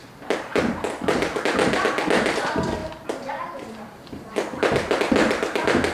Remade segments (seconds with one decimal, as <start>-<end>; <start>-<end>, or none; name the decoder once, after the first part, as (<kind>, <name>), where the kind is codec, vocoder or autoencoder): 2.8-4.2 (vocoder, BigVGAN v2)